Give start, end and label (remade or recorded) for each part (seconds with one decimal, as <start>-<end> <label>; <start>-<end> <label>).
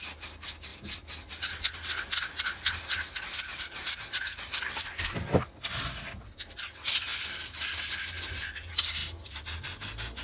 0.0-3.5 recorded; 3.5-4.1 remade; 4.1-10.2 recorded